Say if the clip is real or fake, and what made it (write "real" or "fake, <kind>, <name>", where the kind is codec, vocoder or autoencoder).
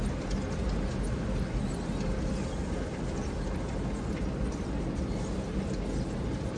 real